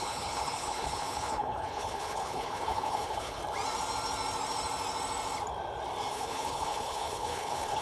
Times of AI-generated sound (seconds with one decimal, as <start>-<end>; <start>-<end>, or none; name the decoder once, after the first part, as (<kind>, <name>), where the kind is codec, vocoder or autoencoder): 0.0-3.4 (codec, HILCodec); 6.1-7.8